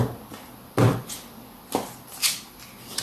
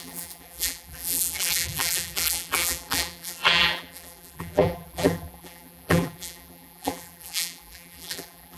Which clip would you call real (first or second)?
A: first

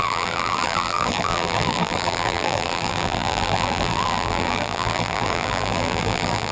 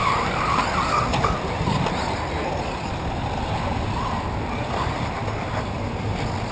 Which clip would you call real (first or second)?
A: second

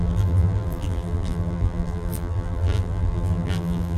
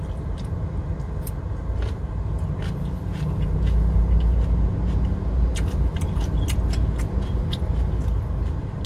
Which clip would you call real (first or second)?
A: second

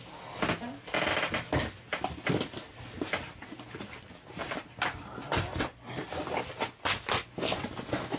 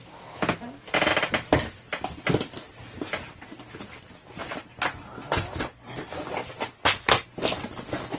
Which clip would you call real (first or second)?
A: second